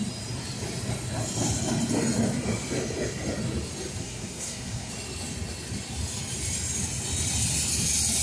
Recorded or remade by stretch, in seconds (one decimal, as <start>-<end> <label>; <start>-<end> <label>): 0.0-4.0 recorded; 4.0-4.9 remade; 4.9-8.2 recorded